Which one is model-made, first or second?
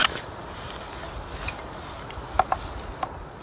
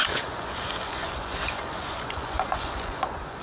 second